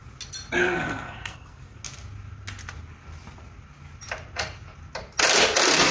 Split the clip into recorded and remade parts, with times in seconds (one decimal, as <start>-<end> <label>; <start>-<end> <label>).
0.0-0.6 recorded; 0.6-1.8 remade; 1.8-5.9 recorded

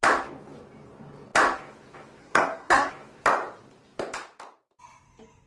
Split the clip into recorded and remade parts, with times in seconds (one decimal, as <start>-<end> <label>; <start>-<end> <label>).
0.0-2.2 recorded; 2.2-2.9 remade; 2.9-5.5 recorded

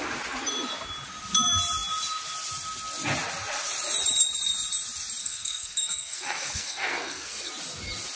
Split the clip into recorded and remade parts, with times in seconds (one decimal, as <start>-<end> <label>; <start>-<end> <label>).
0.0-5.2 recorded; 5.2-7.5 remade; 7.5-8.2 recorded

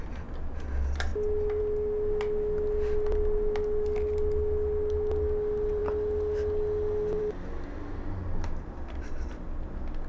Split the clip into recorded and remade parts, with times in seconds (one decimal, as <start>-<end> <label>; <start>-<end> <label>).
0.0-10.1 recorded

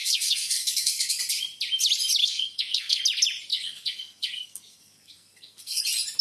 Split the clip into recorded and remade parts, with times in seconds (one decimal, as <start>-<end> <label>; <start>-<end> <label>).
0.0-1.2 remade; 1.2-2.2 recorded; 2.2-3.0 remade; 3.0-3.5 recorded; 3.5-5.8 remade; 5.8-6.2 recorded

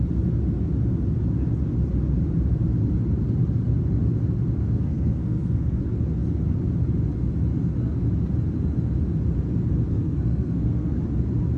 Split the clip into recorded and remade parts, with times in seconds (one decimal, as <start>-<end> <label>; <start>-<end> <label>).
0.0-4.6 recorded; 4.6-5.8 remade; 5.8-9.9 recorded; 9.9-11.0 remade; 11.0-11.6 recorded

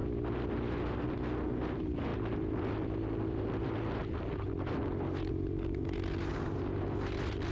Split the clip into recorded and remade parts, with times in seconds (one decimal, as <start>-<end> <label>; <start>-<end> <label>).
0.0-7.5 recorded